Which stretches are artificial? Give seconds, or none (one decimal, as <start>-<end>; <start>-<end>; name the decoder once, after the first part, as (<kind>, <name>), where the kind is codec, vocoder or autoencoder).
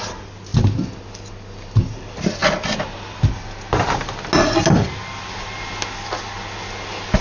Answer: none